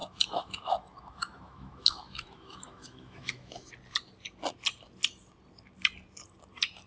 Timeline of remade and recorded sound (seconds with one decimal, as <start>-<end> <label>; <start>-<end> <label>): 0.0-3.7 remade; 3.7-6.9 recorded